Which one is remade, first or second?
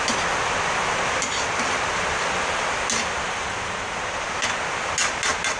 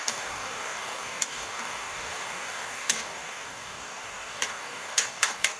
second